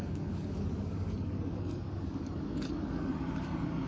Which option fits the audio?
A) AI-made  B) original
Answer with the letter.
A